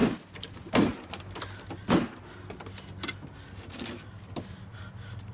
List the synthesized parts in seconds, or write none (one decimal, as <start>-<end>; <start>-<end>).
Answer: none